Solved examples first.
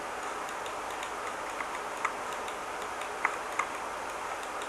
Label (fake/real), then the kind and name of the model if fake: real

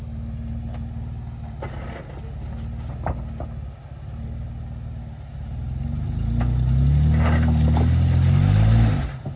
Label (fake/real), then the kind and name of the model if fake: real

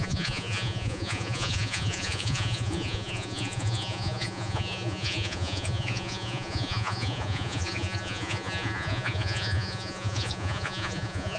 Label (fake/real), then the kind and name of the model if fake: fake, vocoder, Vocos